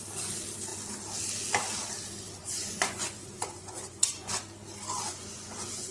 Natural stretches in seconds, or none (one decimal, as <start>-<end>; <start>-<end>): 0.0-2.4; 4.3-5.1